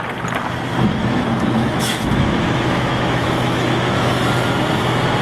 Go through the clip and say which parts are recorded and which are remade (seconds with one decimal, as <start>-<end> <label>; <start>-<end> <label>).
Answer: 0.0-1.0 recorded; 1.0-4.1 remade; 4.1-5.2 recorded